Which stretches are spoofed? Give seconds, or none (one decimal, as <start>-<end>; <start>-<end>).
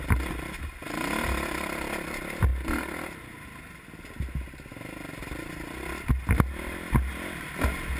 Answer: none